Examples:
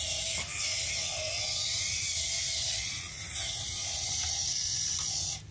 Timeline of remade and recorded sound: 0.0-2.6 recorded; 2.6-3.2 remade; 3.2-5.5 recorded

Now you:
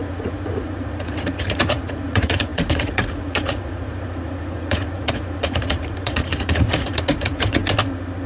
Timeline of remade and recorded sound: 0.0-7.6 remade; 7.6-8.3 recorded